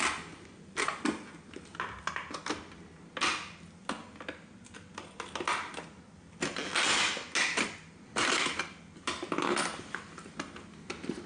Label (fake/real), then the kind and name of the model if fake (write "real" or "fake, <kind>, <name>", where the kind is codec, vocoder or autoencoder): real